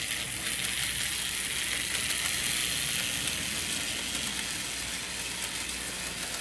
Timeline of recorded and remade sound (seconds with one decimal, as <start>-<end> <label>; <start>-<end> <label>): 0.0-6.4 recorded